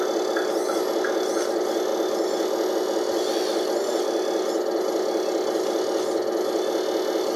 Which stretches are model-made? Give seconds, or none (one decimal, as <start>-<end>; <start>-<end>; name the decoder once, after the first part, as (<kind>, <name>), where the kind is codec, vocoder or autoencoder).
none